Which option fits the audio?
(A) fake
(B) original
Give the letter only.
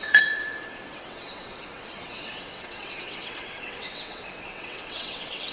A